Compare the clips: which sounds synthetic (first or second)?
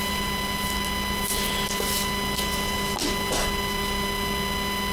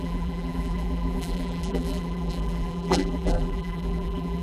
second